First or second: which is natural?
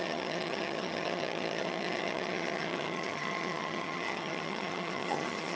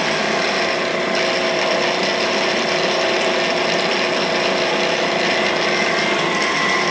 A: second